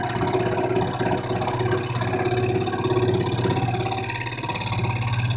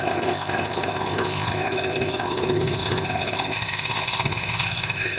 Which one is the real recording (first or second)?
first